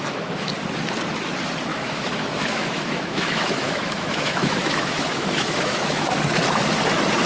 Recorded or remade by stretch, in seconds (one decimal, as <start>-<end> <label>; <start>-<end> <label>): 0.0-0.5 remade; 0.5-1.7 recorded; 1.7-6.1 remade; 6.1-7.3 recorded

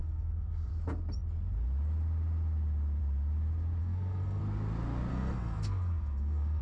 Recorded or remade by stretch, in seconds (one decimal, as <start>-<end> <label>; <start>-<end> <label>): 0.0-0.7 remade; 0.7-3.8 recorded; 3.8-4.4 remade; 4.4-5.1 recorded; 5.1-6.6 remade